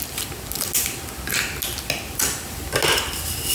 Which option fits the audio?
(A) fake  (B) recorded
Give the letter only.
B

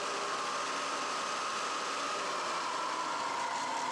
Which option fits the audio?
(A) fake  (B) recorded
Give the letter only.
B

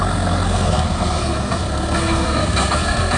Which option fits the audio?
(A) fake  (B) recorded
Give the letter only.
A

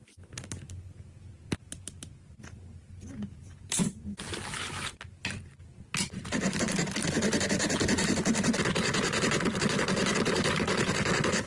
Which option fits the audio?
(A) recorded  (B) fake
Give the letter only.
A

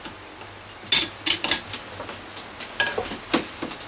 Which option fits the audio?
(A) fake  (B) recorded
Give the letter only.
B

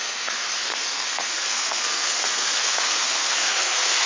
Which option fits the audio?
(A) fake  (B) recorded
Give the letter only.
A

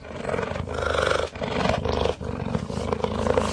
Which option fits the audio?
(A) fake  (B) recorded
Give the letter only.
B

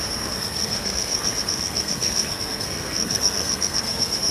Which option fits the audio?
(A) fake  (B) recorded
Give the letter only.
A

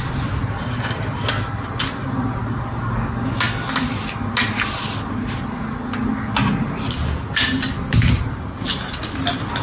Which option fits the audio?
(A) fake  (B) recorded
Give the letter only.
B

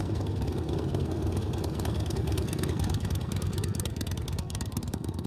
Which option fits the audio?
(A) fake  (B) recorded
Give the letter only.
A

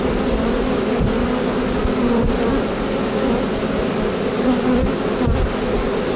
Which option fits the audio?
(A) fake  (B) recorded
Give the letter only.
B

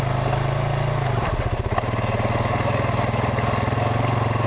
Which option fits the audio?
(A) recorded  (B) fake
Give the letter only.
A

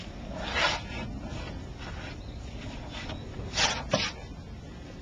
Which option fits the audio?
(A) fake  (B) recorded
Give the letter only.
B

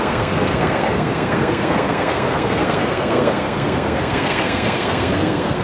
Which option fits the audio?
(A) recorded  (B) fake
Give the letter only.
B